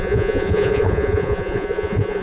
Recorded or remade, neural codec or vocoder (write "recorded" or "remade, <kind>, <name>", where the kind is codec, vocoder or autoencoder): remade, vocoder, Vocos